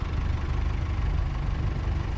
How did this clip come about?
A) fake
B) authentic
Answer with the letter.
B